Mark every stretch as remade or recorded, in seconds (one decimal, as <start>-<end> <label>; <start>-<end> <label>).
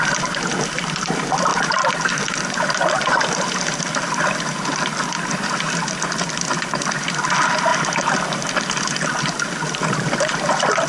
0.0-10.9 recorded